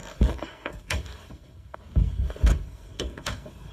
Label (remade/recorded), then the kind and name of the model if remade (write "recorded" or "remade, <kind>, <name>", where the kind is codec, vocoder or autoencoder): remade, codec, SNAC